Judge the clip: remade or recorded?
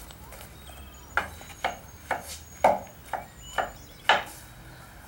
recorded